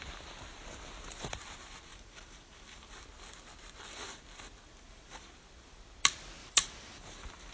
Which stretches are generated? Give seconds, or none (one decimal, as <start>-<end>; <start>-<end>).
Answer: 1.9-2.9; 4.7-5.3; 6.4-7.5